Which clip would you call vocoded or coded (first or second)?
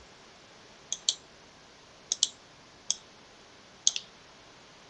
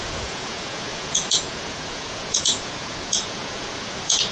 second